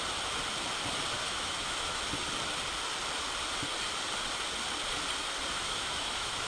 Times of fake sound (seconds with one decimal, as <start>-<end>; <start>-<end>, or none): 1.2-2.0; 5.5-6.5